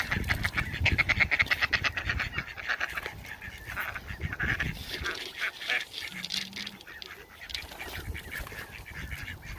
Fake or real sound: real